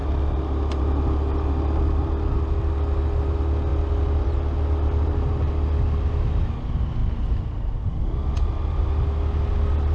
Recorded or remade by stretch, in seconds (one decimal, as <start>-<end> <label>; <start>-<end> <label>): 0.0-9.9 recorded